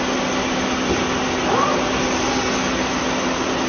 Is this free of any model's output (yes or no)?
yes